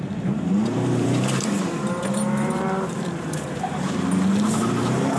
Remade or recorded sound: remade